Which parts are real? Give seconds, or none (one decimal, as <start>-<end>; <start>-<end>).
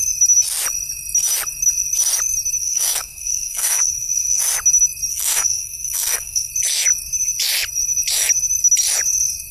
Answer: 0.0-2.6; 4.4-5.1; 6.5-9.5